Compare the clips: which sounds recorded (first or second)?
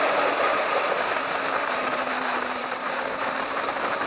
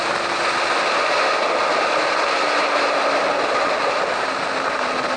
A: second